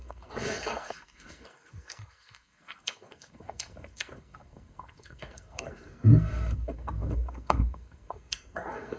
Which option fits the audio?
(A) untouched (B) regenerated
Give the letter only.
B